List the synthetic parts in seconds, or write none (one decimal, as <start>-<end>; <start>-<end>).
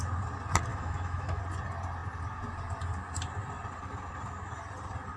0.7-1.4